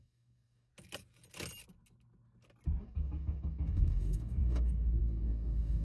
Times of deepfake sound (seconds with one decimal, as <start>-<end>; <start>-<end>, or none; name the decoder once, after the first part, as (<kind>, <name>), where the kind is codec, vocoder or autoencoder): 0.0-0.7 (codec, DAC); 2.8-5.8